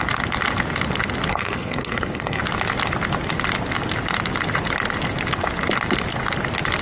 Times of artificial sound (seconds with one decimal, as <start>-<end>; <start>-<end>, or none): 1.3-2.4

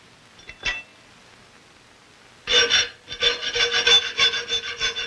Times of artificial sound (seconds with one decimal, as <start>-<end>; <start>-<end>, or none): none

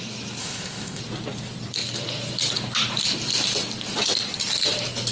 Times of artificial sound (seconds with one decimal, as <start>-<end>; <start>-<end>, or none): 0.4-1.0

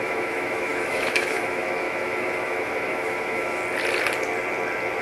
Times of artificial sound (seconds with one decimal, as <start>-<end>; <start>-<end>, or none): 0.0-3.6